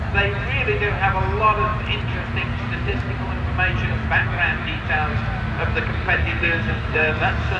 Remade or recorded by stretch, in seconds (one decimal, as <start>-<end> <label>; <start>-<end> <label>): 0.0-6.2 recorded; 6.2-7.1 remade; 7.1-7.6 recorded